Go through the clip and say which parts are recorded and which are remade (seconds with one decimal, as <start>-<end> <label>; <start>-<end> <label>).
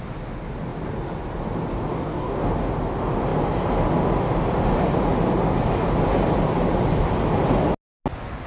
0.0-1.9 recorded; 1.9-2.7 remade; 2.7-8.5 recorded